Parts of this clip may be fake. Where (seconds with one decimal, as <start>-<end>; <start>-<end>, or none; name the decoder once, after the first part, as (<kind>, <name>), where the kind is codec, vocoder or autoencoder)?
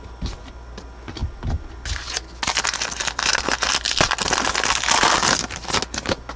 none